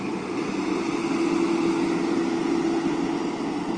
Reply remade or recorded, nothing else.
recorded